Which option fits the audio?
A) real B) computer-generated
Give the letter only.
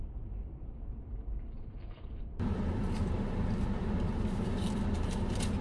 B